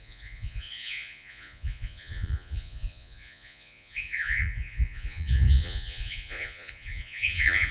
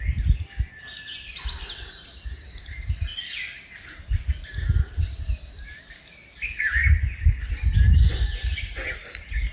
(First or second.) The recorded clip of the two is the second